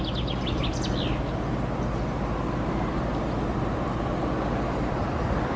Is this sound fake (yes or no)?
no